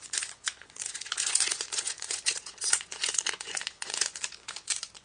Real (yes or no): no